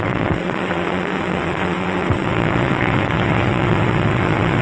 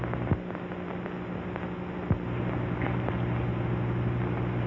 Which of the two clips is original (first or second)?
second